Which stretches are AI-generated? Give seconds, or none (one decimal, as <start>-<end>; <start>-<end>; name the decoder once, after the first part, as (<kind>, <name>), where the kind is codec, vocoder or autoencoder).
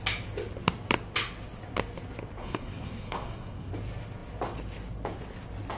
2.4-3.7 (codec, SNAC)